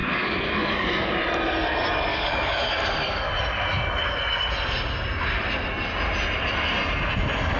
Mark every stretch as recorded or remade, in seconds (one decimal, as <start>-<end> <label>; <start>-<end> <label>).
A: 0.0-1.2 remade; 1.2-2.1 recorded; 2.1-3.3 remade; 3.3-7.6 recorded